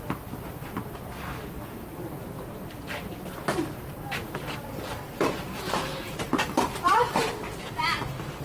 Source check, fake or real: fake